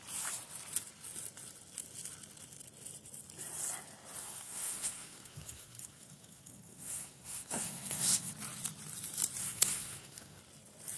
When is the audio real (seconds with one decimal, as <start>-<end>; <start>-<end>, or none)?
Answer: 0.0-4.2; 8.3-9.4; 10.4-11.0